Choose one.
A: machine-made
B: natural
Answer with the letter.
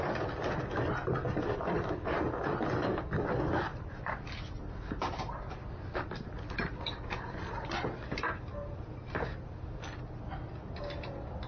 B